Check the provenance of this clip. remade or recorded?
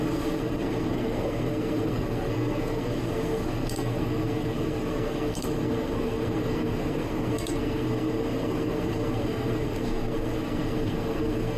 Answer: remade